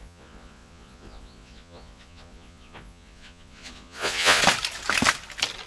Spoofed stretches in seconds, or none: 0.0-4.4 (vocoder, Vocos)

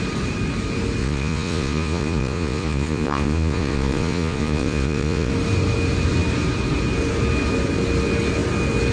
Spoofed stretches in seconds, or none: 1.0-5.3 (vocoder, Vocos)

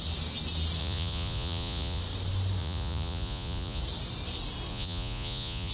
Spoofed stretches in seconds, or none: 0.8-2.0 (vocoder, Vocos); 2.6-3.8; 4.7-5.7

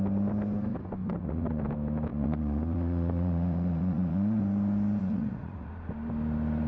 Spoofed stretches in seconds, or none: 1.0-1.6 (vocoder, Vocos); 2.1-4.4; 5.0-5.7

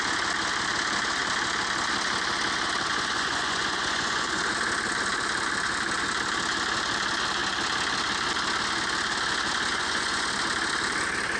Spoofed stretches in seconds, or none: 2.9-4.4 (vocoder, Vocos); 9.7-10.3

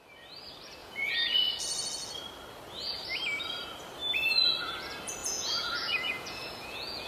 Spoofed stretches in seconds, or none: 0.8-1.6 (vocoder, Vocos); 5.2-7.1